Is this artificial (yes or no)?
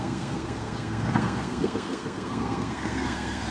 yes